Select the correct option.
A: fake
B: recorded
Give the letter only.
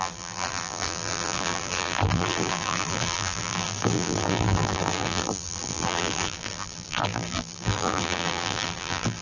A